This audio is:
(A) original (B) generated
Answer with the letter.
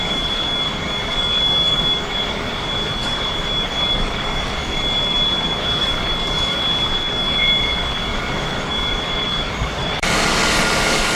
B